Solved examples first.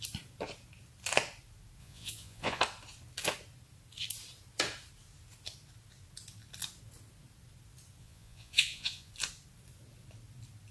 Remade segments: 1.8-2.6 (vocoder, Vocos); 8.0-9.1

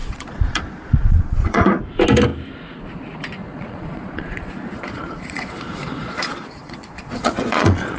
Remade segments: 0.0-1.8 (vocoder, Vocos); 3.4-8.0

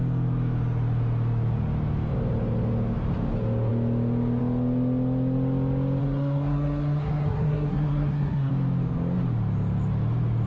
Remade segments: 6.0-8.5 (codec, SNAC)

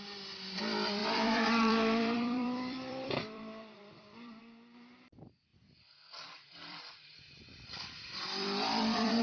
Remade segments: 1.0-4.4 (vocoder, BigVGAN v2); 5.5-9.2

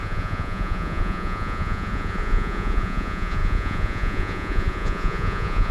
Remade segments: 0.0-5.7 (vocoder, Vocos)

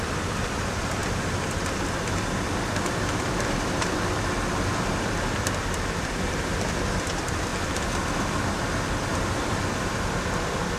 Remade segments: 0.0-1.0 (vocoder, BigVGAN v2); 2.2-10.8

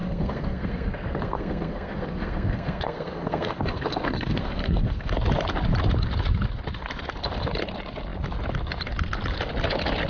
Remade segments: 0.0-5.1 (codec, SNAC)

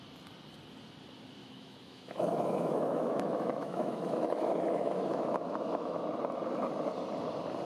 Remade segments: 1.4-6.0 (autoencoder, DAC-VAE)